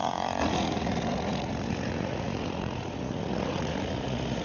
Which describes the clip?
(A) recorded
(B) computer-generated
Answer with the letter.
B